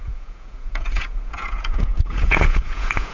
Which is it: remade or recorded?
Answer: remade